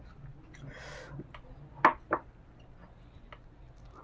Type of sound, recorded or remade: recorded